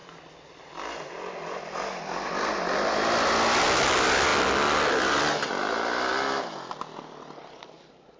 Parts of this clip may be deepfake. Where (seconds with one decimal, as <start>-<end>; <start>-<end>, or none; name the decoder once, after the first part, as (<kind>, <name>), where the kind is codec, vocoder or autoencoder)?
none